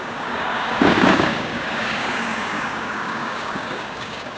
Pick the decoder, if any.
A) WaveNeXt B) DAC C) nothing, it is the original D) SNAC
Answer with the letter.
B